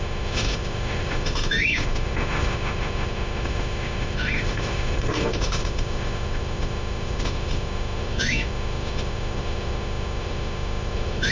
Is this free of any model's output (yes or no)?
no